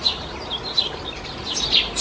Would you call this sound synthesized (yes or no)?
no